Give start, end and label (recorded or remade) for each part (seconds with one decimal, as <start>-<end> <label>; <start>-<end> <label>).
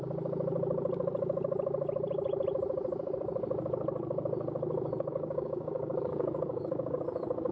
0.0-5.1 recorded; 5.1-7.0 remade; 7.0-7.5 recorded